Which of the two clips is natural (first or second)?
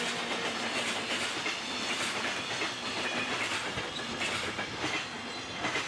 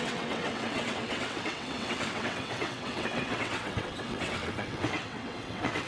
first